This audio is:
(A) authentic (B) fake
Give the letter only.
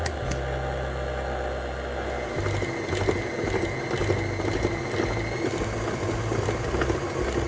A